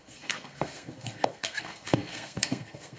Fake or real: fake